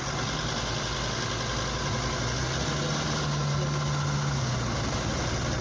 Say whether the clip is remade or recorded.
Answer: recorded